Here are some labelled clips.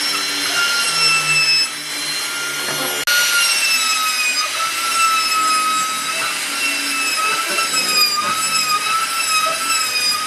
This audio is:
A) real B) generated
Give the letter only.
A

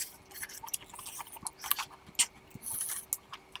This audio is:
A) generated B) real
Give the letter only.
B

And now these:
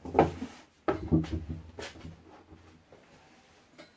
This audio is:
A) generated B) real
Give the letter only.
B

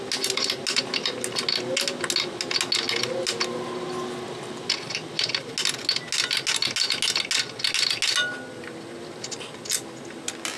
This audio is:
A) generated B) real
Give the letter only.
B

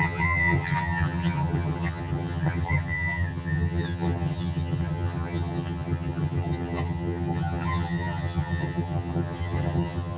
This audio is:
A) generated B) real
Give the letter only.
A